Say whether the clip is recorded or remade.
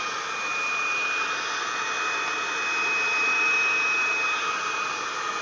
recorded